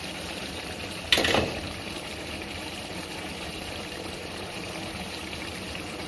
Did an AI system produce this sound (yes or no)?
yes